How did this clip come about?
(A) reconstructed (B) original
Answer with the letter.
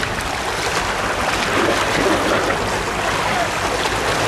B